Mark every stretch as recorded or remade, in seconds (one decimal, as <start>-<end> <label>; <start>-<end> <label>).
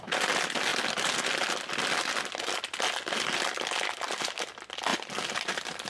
0.0-5.9 recorded